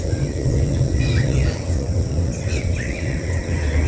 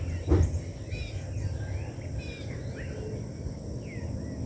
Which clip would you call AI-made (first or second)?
first